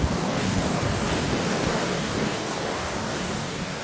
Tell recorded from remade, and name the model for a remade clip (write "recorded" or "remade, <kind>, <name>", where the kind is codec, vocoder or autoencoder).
remade, codec, DAC